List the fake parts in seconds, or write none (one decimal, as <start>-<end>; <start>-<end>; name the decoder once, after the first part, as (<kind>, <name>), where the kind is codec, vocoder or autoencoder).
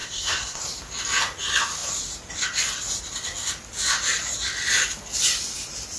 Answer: 0.0-0.6 (codec, SNAC)